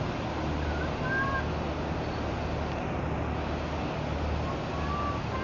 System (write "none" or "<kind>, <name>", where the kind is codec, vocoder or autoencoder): none